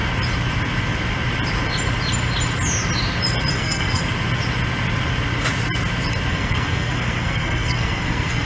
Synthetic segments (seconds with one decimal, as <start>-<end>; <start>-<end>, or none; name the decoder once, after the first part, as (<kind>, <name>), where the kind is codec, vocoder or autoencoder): 3.5-4.0 (codec, SNAC); 6.3-8.4